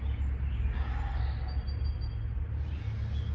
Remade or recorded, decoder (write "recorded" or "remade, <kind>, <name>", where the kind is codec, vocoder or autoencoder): recorded